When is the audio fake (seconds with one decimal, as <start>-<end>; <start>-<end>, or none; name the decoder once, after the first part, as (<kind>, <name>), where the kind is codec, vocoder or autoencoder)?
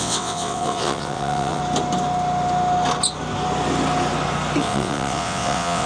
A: 0.0-1.6 (vocoder, WaveNeXt); 4.6-5.9